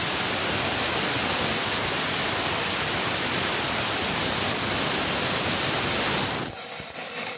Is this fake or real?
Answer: real